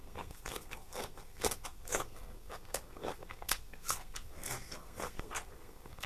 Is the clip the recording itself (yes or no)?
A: no